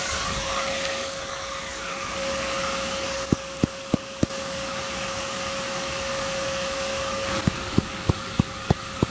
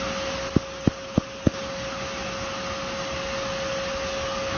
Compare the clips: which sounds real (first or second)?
second